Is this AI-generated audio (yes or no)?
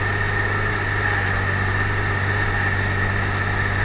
no